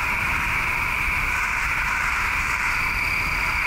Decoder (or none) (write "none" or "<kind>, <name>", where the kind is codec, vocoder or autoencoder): none